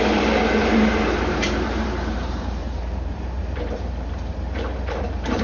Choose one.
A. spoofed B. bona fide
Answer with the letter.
A